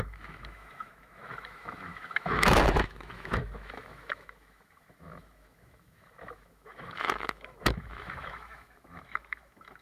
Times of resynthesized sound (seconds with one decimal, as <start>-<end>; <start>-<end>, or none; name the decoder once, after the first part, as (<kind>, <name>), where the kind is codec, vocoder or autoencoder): 0.0-9.8 (autoencoder, DAC-VAE)